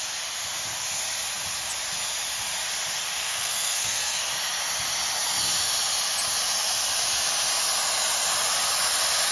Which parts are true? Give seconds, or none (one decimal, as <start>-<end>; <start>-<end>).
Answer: 0.0-3.2; 4.2-9.3